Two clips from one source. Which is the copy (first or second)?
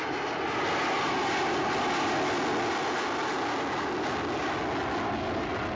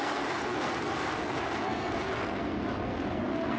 second